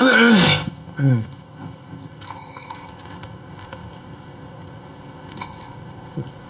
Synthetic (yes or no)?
yes